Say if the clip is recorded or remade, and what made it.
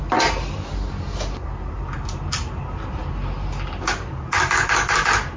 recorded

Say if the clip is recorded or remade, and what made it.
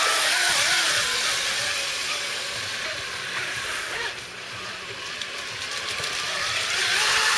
remade, vocoder, BigVGAN v2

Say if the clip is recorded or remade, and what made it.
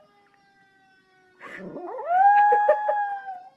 recorded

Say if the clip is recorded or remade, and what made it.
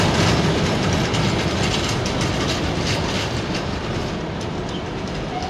recorded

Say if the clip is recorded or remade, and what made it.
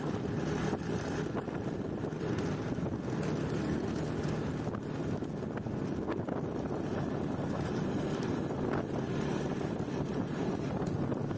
recorded